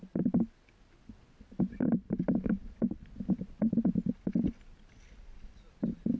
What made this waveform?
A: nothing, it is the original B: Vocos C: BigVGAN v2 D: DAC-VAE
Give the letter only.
A